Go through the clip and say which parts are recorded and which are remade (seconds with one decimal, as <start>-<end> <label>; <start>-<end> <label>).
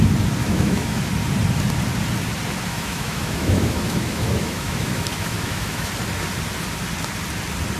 0.0-0.4 recorded; 0.4-1.0 remade; 1.0-2.7 recorded; 2.7-5.9 remade; 5.9-7.8 recorded